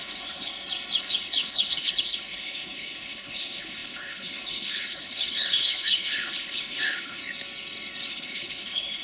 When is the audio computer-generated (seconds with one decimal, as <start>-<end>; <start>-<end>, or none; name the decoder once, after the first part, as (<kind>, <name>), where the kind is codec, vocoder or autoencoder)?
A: 0.0-0.5 (codec, HILCodec); 1.0-7.2; 8.1-9.0